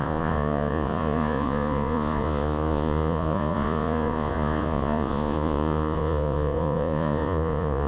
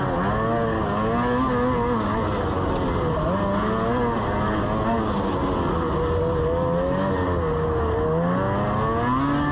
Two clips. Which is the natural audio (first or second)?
second